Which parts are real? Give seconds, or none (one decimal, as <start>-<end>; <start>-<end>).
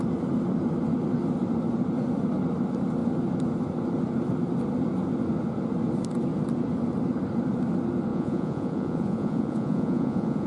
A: 0.0-8.1